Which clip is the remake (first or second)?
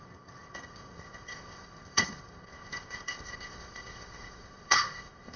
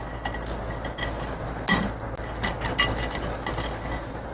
first